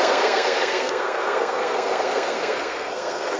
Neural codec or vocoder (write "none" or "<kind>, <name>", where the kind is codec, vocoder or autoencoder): codec, SNAC